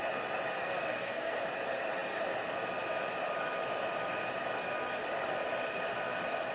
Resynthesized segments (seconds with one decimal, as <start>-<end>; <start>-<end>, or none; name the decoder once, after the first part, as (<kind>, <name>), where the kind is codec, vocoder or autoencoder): 0.6-1.4 (codec, SNAC)